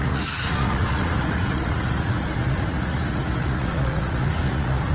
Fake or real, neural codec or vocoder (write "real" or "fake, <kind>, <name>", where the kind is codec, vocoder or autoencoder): fake, vocoder, Vocos